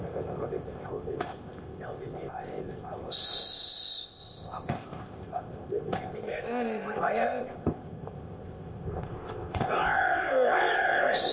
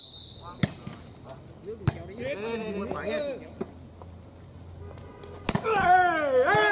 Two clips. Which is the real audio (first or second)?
second